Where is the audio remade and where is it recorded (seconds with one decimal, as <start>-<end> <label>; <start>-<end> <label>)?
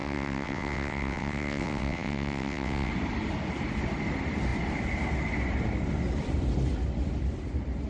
0.0-2.9 remade; 2.9-7.9 recorded